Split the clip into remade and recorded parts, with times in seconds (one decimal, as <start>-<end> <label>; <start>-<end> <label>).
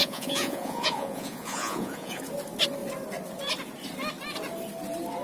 0.0-2.2 remade; 2.2-5.2 recorded